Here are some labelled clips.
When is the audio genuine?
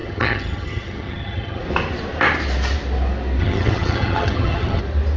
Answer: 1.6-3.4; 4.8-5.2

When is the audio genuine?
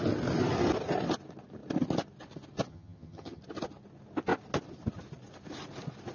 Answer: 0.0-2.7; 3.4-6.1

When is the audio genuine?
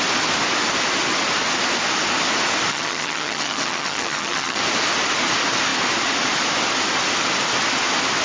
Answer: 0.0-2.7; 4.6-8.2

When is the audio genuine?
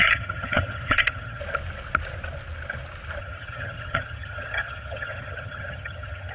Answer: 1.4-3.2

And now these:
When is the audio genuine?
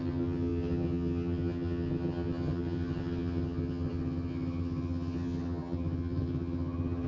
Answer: none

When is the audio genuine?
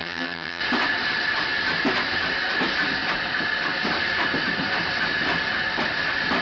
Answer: 0.6-6.4